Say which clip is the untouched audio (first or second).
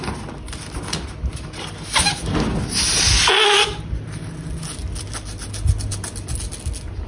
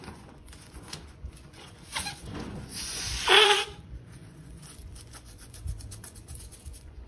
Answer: first